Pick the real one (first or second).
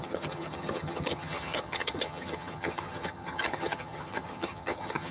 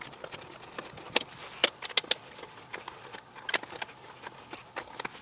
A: second